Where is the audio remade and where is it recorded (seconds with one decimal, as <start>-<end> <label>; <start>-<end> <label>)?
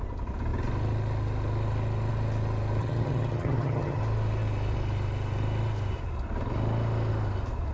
0.0-2.8 recorded; 2.8-4.0 remade; 4.0-7.7 recorded